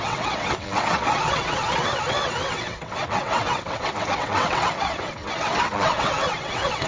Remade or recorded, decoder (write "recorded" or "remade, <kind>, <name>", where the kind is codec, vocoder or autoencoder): remade, vocoder, WaveNeXt